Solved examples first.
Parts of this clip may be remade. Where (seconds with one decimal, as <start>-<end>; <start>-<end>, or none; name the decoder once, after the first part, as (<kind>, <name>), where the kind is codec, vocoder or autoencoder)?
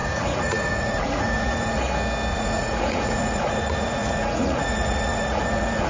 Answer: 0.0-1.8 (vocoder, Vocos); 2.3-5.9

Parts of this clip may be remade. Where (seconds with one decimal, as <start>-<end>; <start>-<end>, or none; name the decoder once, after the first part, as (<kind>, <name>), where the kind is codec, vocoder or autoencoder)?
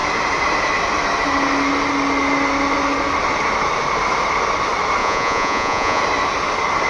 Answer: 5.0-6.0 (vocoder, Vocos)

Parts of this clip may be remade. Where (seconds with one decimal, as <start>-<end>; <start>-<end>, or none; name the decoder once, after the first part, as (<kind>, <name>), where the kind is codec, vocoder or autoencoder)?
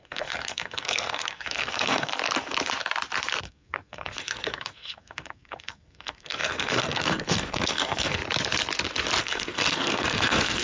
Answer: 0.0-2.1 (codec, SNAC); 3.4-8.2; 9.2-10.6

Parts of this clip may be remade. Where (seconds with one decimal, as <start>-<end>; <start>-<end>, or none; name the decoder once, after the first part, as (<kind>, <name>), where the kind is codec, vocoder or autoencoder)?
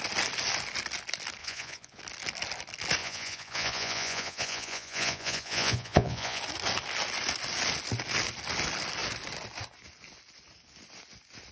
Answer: 1.4-2.0 (vocoder, Vocos); 3.0-6.4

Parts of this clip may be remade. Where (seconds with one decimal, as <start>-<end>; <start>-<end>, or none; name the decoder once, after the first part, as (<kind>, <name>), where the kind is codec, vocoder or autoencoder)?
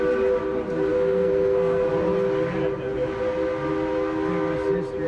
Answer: 0.9-1.9 (codec, SNAC)